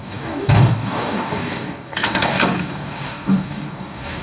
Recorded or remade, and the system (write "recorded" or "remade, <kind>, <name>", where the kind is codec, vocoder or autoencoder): remade, codec, DAC